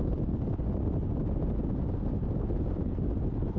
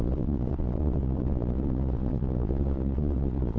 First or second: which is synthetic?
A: second